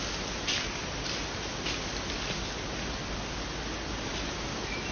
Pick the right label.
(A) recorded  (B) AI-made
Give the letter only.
A